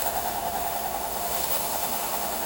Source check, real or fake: fake